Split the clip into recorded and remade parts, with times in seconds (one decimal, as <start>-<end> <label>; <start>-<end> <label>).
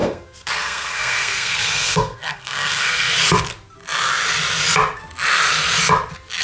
0.0-3.1 remade; 3.1-6.4 recorded